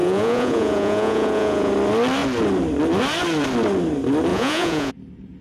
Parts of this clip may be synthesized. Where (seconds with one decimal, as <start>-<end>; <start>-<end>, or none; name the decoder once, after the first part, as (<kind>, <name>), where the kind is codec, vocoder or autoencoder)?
0.0-1.7 (vocoder, Vocos); 4.3-4.9